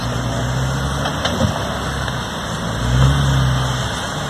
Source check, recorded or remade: recorded